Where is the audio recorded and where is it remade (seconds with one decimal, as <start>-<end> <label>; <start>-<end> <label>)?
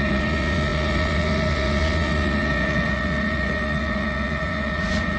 0.0-5.2 remade